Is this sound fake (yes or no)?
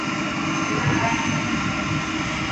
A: no